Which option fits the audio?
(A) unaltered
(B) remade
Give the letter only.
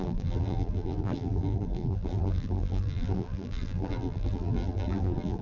B